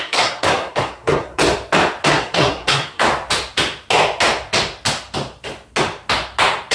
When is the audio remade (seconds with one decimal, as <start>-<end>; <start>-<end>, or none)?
0.0-1.4; 2.1-3.0

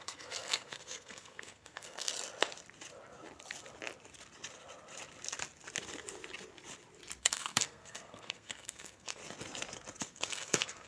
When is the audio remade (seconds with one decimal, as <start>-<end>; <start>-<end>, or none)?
0.0-2.1; 7.2-9.2; 10.0-10.9

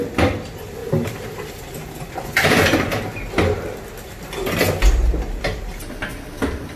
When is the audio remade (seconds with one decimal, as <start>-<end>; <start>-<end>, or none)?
none

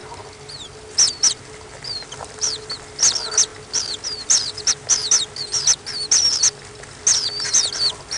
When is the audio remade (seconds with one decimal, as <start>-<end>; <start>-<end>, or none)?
none

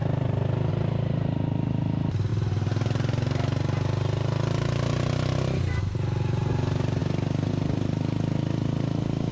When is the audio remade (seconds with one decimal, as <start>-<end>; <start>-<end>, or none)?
none